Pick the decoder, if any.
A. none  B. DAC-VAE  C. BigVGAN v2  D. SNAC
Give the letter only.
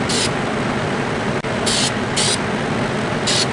A